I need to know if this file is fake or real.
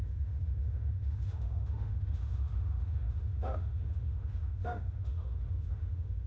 fake